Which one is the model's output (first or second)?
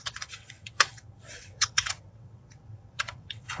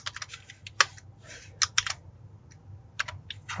first